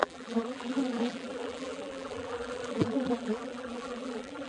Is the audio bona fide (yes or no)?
no